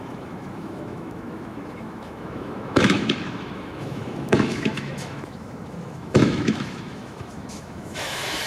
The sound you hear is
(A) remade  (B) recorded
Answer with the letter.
A